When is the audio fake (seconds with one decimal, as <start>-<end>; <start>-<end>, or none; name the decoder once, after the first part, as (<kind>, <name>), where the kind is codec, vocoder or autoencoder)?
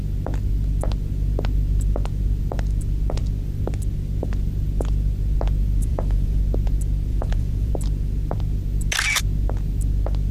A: 5.8-6.4 (vocoder, Vocos); 7.1-7.7